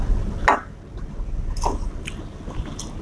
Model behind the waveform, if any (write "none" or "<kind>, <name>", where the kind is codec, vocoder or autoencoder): none